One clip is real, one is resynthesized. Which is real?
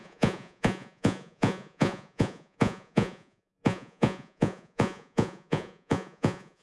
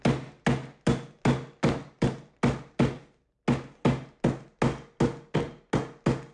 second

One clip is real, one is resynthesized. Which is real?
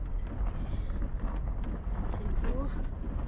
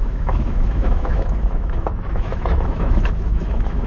first